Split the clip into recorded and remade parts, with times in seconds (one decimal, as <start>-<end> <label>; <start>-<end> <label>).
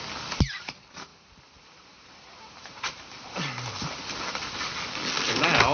0.0-5.7 recorded